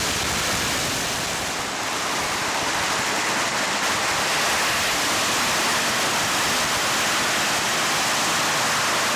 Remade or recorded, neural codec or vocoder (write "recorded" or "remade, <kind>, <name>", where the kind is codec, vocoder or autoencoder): recorded